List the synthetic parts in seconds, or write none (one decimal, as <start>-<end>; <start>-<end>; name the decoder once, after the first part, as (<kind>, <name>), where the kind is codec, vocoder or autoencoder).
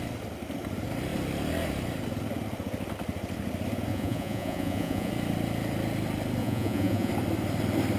3.9-5.1 (vocoder, Vocos); 6.4-7.1